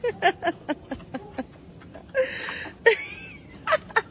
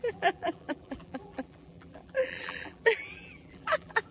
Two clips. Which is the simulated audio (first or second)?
second